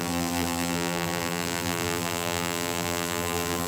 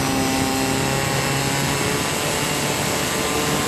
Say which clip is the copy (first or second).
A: first